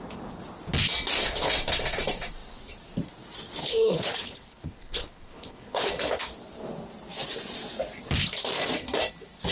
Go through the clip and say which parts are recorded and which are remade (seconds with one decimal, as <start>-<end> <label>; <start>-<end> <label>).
0.0-3.6 recorded; 3.6-5.9 remade; 5.9-9.5 recorded